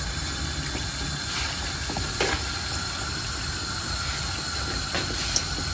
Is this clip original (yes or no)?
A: yes